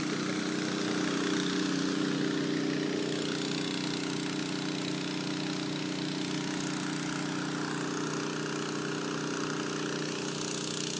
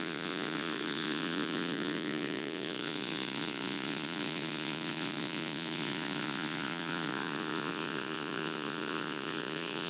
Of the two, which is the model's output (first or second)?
second